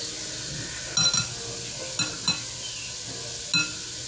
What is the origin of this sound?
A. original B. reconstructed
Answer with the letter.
A